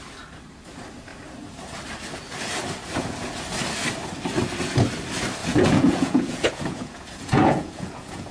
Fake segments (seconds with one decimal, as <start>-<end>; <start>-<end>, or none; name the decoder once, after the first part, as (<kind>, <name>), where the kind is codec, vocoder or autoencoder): 5.4-8.3 (vocoder, Vocos)